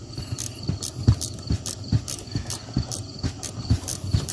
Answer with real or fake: fake